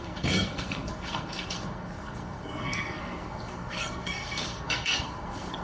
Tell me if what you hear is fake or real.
fake